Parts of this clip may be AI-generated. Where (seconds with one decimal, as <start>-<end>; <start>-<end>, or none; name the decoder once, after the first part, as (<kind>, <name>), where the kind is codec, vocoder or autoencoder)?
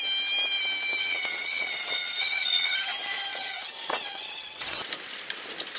1.0-2.8 (vocoder, WaveNeXt); 3.3-4.8